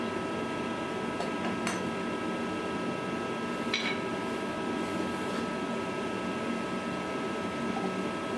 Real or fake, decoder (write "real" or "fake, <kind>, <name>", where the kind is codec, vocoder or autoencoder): real